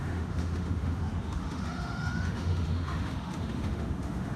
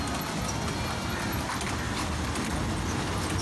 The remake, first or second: first